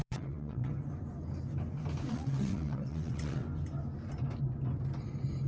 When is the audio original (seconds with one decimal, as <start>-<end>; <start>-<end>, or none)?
0.7-2.1; 3.4-5.5